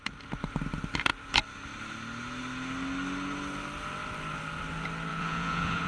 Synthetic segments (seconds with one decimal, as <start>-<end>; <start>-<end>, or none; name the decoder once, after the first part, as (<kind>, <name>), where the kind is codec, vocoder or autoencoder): 5.1-5.9 (vocoder, Vocos)